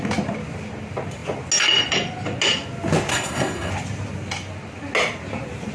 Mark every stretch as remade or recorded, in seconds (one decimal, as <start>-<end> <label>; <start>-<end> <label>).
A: 0.0-3.1 recorded; 3.1-3.7 remade; 3.7-5.7 recorded